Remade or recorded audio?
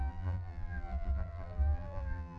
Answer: remade